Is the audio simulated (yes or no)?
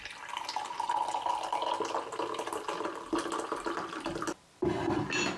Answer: no